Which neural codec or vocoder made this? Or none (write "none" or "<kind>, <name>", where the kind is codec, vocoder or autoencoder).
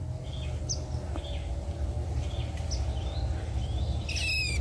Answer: none